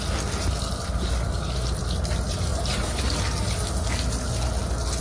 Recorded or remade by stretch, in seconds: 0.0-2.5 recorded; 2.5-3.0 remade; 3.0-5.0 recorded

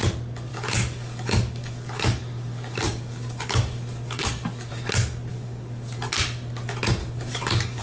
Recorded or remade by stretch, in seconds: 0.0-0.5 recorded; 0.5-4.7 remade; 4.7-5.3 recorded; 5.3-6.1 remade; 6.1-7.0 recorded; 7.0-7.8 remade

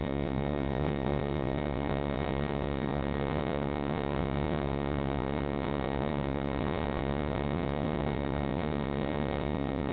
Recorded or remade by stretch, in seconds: 0.0-9.9 remade

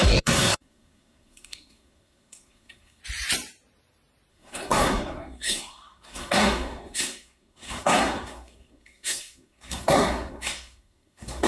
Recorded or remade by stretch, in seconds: 0.0-3.0 remade; 3.0-4.3 recorded; 4.3-11.5 remade